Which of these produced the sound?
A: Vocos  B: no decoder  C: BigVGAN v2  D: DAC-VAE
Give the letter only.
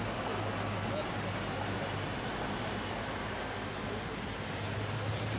B